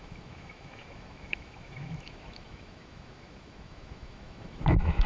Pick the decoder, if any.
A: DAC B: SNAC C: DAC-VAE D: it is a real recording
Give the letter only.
C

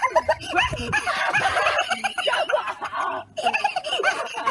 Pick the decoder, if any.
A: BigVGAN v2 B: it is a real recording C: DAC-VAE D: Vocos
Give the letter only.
A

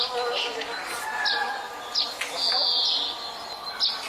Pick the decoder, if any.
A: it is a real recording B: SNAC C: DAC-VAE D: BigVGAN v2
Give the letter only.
A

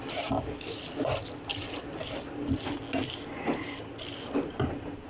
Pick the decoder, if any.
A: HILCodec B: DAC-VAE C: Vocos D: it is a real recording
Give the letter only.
D